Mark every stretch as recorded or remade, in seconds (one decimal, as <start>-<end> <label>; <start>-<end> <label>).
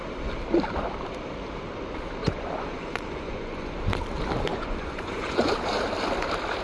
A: 0.0-2.2 recorded; 2.2-3.7 remade; 3.7-4.5 recorded; 4.5-5.5 remade; 5.5-6.6 recorded